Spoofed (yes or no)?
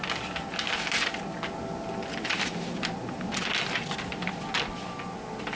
no